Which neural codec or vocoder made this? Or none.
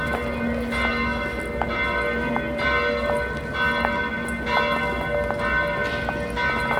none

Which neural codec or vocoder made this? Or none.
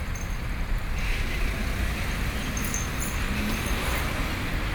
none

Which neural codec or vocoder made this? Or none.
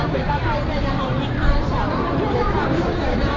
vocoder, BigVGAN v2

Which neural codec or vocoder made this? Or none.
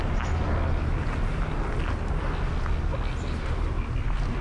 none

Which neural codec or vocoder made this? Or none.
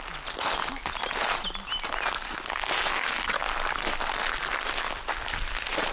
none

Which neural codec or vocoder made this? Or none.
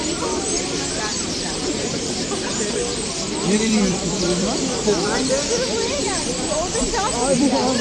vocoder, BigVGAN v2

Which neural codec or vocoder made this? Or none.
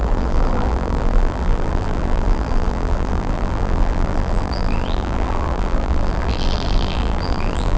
vocoder, BigVGAN v2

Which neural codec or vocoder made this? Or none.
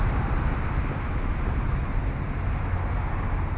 none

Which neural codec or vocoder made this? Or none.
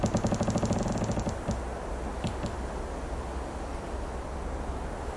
none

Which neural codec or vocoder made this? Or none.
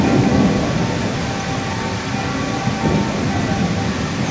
none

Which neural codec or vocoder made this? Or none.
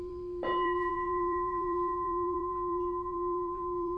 vocoder, BigVGAN v2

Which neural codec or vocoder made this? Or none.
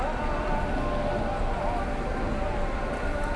none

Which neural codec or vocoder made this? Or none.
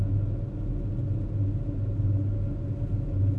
none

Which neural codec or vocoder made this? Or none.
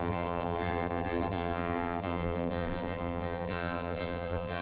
vocoder, BigVGAN v2